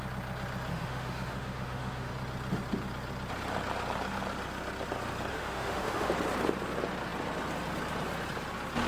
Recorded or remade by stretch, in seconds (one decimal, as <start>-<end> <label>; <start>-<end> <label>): 0.0-0.7 recorded; 0.7-2.1 remade; 2.1-5.3 recorded; 5.3-6.1 remade; 6.1-8.9 recorded